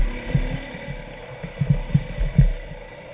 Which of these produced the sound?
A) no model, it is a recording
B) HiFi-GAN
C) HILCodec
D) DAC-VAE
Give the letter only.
A